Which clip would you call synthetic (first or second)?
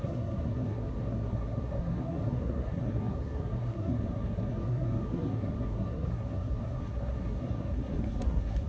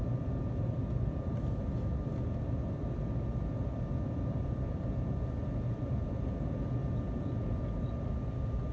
first